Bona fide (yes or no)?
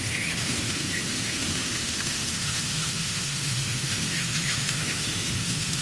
no